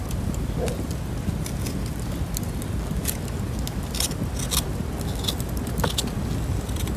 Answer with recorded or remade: recorded